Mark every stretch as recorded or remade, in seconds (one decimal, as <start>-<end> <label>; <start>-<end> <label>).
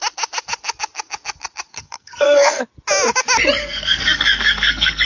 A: 0.0-1.7 recorded; 1.7-2.6 remade; 2.6-3.6 recorded; 3.6-5.0 remade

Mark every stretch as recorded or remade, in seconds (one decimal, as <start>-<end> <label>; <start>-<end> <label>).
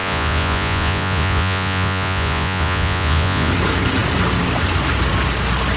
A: 0.0-3.5 remade; 3.5-5.8 recorded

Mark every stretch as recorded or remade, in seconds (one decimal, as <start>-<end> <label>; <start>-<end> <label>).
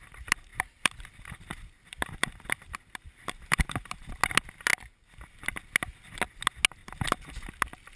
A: 0.0-0.5 recorded; 0.5-4.2 remade; 4.2-6.8 recorded; 6.8-7.4 remade; 7.4-8.0 recorded